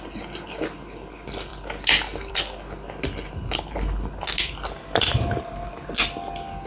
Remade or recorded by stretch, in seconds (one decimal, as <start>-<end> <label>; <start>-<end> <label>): 0.0-6.7 recorded